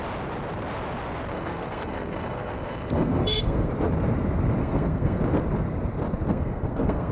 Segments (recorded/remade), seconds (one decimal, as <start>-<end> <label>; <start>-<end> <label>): 0.0-1.3 recorded; 1.3-3.7 remade; 3.7-4.6 recorded; 4.6-5.2 remade; 5.2-6.3 recorded; 6.3-7.1 remade